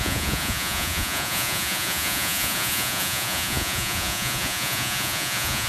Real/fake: fake